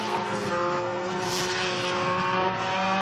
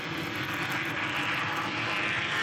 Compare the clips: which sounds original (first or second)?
second